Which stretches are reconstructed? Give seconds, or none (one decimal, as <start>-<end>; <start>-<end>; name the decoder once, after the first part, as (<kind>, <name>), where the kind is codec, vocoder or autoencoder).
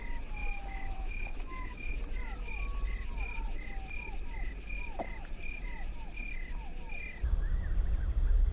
0.4-1.9 (autoencoder, DAC-VAE)